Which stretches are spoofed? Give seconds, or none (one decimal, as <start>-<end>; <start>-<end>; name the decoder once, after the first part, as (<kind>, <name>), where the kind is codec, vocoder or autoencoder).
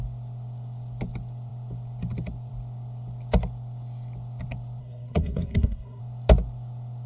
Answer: 4.8-6.0 (codec, SNAC)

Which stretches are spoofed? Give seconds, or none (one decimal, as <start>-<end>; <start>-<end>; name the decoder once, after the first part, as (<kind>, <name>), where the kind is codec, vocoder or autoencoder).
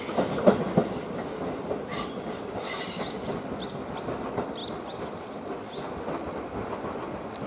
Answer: none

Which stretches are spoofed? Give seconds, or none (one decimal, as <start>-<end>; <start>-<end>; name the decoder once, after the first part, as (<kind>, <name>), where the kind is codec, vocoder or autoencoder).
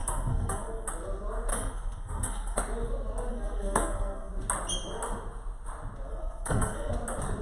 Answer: 0.0-0.9 (codec, SNAC); 1.5-2.6; 3.3-4.3; 6.1-6.9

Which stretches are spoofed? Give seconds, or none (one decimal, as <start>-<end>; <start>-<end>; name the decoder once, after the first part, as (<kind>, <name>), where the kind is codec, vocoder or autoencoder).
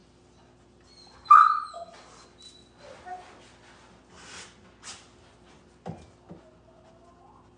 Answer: none